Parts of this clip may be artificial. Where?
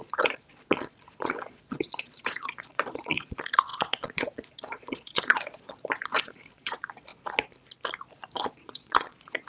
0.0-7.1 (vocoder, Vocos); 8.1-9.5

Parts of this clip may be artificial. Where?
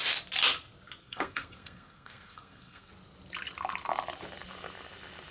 1.0-2.9 (codec, SNAC)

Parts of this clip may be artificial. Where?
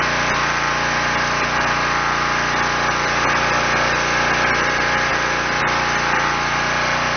none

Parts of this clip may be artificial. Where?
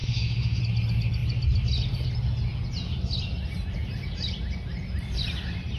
0.0-0.6 (autoencoder, DAC-VAE)